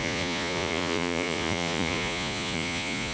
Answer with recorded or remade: remade